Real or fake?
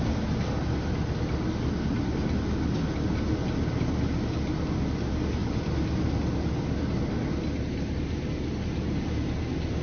real